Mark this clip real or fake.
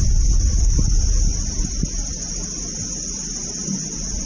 real